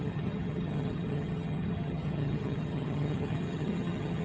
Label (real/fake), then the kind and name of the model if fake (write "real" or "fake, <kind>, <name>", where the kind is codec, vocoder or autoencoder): fake, vocoder, HiFi-GAN